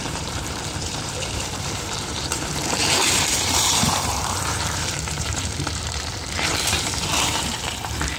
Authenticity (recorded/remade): remade